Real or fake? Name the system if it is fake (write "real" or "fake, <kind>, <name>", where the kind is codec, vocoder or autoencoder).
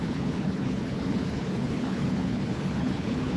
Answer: fake, codec, HILCodec